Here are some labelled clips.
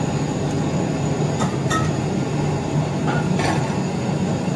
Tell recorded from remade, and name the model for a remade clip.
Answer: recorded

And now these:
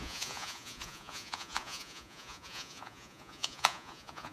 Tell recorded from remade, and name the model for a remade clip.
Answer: remade, vocoder, Vocos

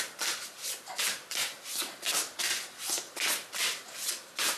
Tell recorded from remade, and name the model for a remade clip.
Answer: recorded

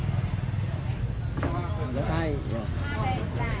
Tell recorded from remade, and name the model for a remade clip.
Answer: recorded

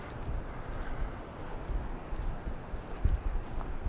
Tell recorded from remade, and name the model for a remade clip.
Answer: recorded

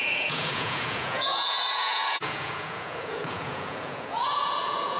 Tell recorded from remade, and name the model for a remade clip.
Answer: remade, vocoder, Vocos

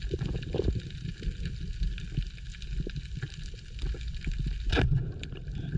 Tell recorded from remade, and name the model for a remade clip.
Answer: recorded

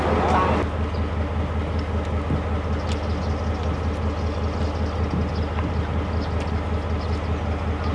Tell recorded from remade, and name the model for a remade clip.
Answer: recorded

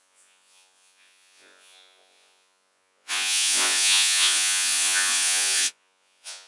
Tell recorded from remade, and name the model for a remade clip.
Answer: remade, vocoder, Vocos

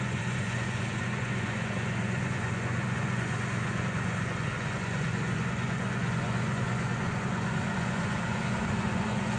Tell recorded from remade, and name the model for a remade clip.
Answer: remade, vocoder, Vocos